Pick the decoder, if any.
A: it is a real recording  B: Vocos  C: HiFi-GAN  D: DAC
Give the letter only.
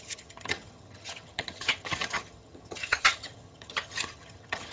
C